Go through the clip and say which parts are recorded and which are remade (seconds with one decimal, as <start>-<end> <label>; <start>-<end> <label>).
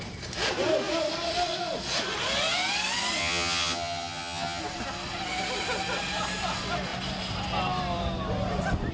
0.0-3.2 recorded; 3.2-4.6 remade; 4.6-8.9 recorded